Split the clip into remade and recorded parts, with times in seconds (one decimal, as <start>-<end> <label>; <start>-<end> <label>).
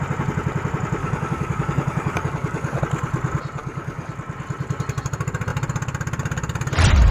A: 0.0-1.0 recorded; 1.0-2.8 remade; 2.8-3.6 recorded; 3.6-4.1 remade; 4.1-7.1 recorded